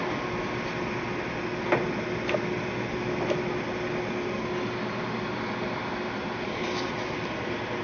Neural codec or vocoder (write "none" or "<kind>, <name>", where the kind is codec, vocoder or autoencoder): none